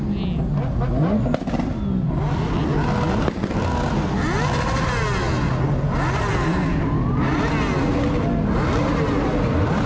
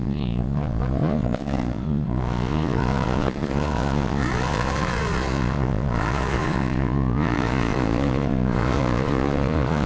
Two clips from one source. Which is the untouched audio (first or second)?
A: first